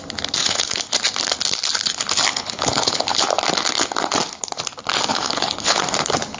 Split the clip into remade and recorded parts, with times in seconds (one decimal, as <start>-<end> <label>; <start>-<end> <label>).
0.0-0.4 recorded; 0.4-0.9 remade; 0.9-2.3 recorded; 2.3-3.2 remade; 3.2-5.1 recorded; 5.1-5.8 remade; 5.8-6.4 recorded